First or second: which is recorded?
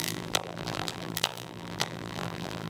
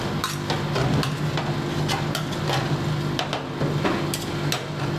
second